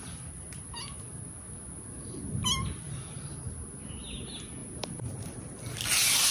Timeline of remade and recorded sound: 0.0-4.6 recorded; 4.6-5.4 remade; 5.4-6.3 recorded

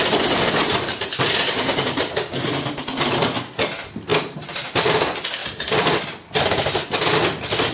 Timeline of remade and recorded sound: 0.0-0.6 recorded; 0.6-3.2 remade; 3.2-4.1 recorded; 4.1-4.9 remade; 4.9-5.4 recorded; 5.4-6.0 remade; 6.0-7.7 recorded

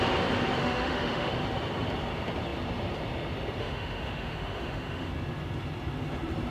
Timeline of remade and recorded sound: 0.0-0.6 recorded; 0.6-1.3 remade; 1.3-3.6 recorded; 3.6-5.1 remade; 5.1-6.5 recorded